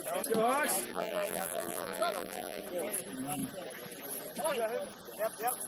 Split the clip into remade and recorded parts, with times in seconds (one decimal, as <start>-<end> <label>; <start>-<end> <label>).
0.0-0.9 recorded; 0.9-2.6 remade; 2.6-5.7 recorded

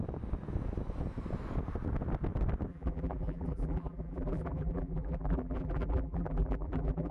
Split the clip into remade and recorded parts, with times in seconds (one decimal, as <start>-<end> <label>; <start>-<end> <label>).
0.0-2.7 recorded; 2.7-7.1 remade